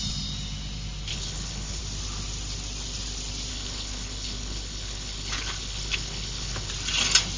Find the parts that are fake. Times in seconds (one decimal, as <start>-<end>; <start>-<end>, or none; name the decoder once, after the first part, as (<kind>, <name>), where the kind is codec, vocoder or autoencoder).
1.1-1.8 (codec, HILCodec); 3.5-6.7